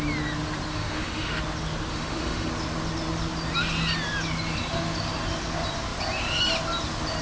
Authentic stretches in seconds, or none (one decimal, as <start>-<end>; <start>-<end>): 0.0-0.7; 1.4-1.9; 2.5-7.2